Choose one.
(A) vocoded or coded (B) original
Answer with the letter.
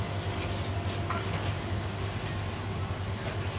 B